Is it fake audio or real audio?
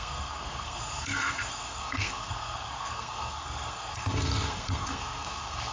fake